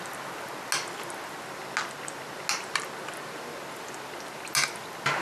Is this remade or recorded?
recorded